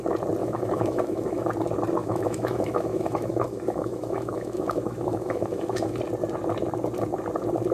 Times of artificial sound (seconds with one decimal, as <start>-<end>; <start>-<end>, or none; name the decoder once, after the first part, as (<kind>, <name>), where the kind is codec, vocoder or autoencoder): 0.4-1.5 (autoencoder, DAC-VAE); 2.0-6.0